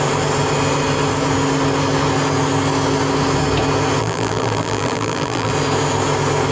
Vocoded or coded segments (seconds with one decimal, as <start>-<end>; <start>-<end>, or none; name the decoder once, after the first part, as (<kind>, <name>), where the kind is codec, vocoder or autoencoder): 4.0-5.5 (vocoder, BigVGAN v2)